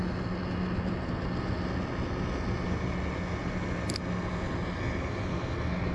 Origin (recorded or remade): recorded